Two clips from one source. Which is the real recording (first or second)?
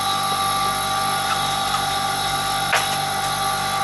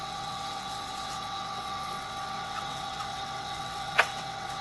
first